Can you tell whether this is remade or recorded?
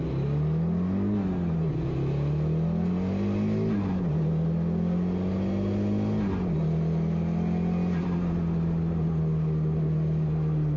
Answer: recorded